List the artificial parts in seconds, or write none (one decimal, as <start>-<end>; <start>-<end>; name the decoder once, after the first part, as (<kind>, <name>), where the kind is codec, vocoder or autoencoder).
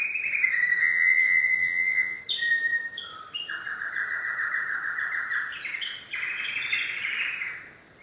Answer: 0.8-2.2 (vocoder, Vocos)